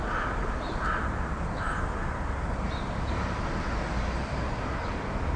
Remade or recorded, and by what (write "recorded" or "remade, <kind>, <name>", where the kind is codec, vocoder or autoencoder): recorded